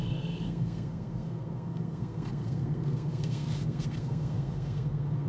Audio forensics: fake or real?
fake